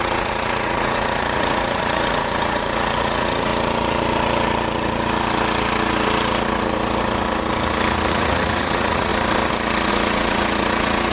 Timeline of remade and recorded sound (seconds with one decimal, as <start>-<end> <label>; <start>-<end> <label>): 0.0-3.5 remade; 3.5-8.1 recorded; 8.1-9.1 remade; 9.1-9.9 recorded; 9.9-11.1 remade